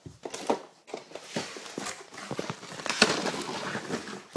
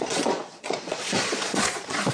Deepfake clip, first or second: second